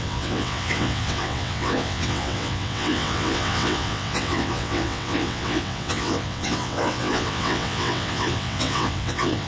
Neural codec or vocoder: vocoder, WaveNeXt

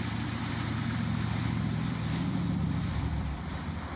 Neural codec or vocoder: vocoder, BigVGAN v2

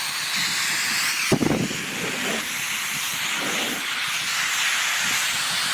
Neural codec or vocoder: none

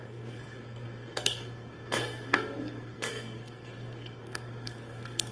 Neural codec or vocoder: codec, SNAC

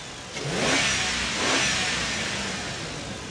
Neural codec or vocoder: none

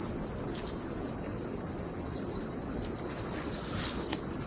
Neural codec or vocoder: none